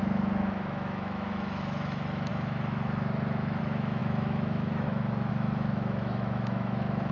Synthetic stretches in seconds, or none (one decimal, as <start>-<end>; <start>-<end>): 0.0-7.1